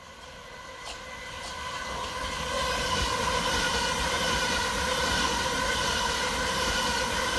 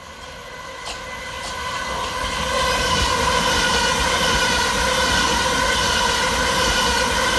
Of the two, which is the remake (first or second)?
first